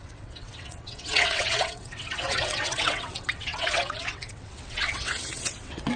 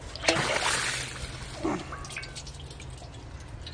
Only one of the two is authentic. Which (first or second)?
second